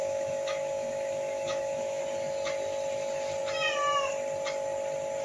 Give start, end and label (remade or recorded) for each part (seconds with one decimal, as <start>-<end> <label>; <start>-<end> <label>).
0.0-2.0 remade; 2.0-5.2 recorded